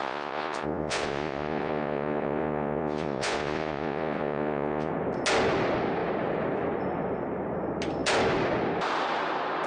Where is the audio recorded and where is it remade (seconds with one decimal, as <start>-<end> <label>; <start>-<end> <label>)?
0.0-4.9 remade; 4.9-9.7 recorded